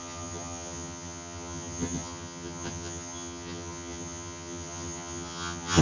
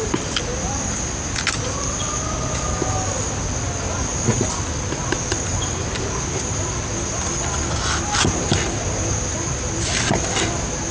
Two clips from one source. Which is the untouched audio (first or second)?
second